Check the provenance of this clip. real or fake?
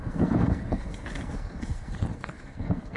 fake